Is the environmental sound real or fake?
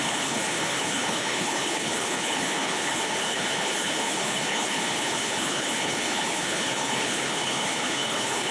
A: fake